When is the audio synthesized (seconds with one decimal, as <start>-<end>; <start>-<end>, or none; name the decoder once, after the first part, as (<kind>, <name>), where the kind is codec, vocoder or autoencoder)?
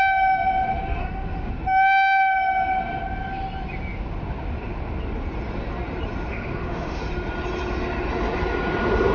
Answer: 1.0-1.5 (autoencoder, DAC-VAE); 6.3-7.0